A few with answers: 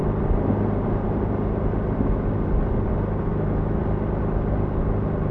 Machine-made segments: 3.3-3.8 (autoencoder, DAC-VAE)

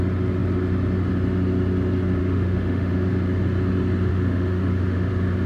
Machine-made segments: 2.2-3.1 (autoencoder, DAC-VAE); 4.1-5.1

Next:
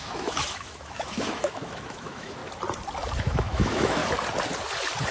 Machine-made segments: 0.0-2.4 (autoencoder, DAC-VAE); 3.2-4.0

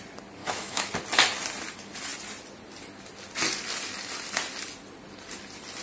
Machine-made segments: 0.4-0.9 (autoencoder, DAC-VAE)

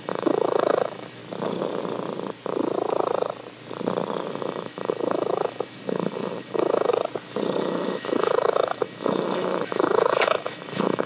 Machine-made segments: 0.0-1.2 (autoencoder, DAC-VAE); 4.3-6.9; 7.6-11.1

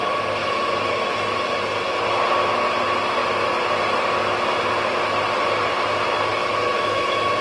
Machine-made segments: 0.4-1.5 (autoencoder, DAC-VAE); 6.3-7.4